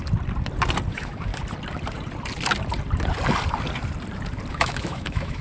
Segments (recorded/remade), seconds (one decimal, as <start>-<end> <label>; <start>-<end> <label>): 0.0-0.9 recorded; 0.9-1.3 remade; 1.3-4.5 recorded; 4.5-5.4 remade